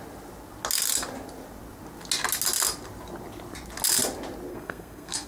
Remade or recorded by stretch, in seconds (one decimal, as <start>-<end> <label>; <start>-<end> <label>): 0.0-4.5 recorded; 4.5-5.3 remade